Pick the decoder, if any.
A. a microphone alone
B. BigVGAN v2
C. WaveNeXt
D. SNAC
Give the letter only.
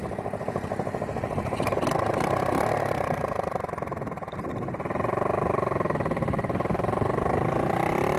A